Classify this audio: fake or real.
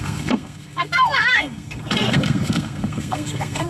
fake